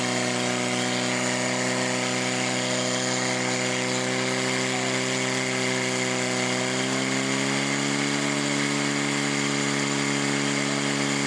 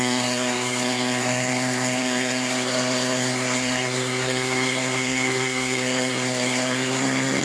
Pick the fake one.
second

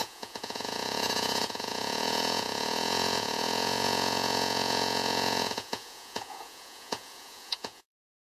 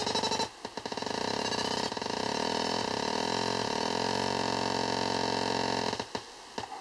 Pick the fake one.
first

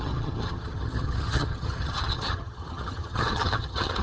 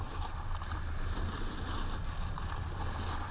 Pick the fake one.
first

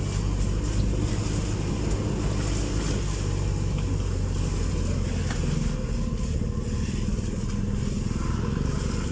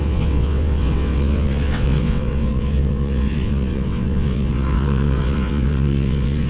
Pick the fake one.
second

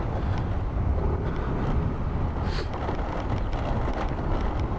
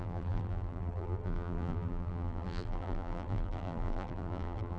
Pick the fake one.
second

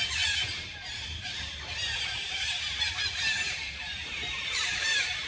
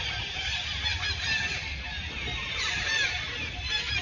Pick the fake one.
first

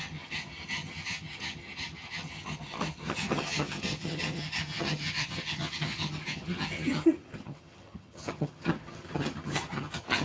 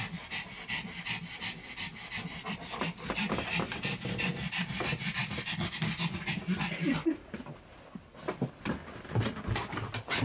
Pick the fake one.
first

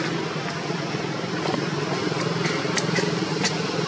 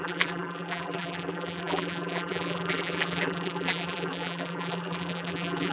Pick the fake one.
second